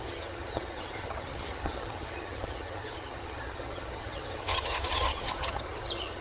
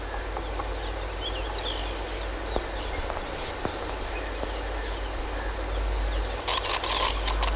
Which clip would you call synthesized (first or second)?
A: first